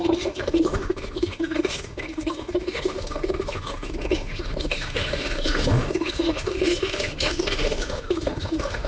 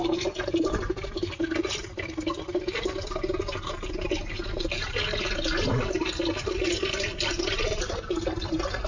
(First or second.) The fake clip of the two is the first